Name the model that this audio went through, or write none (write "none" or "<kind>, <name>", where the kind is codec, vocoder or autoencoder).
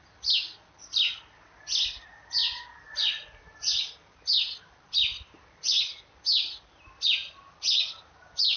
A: none